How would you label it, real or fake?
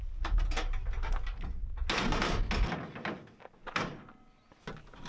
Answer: real